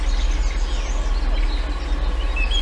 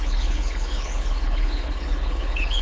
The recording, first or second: first